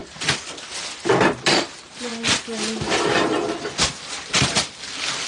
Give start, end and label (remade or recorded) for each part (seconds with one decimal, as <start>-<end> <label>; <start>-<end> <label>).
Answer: 0.0-5.3 recorded